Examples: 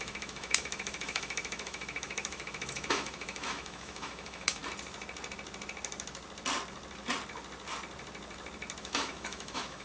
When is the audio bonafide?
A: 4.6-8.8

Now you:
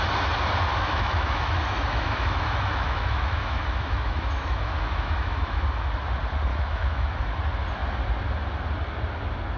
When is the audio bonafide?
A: 0.0-0.7; 5.6-6.5; 7.2-9.6

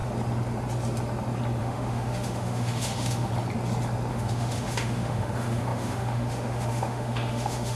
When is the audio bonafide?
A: 0.0-1.6; 3.3-4.1

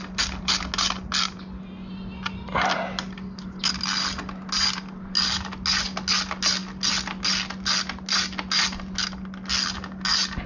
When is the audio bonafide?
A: 0.0-10.5

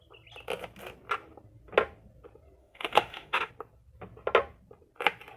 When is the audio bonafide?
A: 0.0-2.6; 3.5-5.4

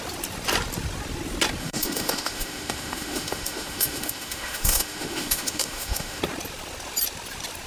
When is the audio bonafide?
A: 0.0-1.6; 6.2-7.7

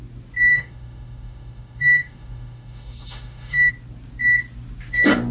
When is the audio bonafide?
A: 0.0-0.5; 3.7-5.3

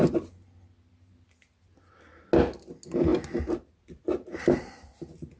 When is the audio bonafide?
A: 0.0-5.4